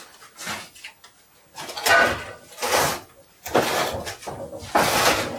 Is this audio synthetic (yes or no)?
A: no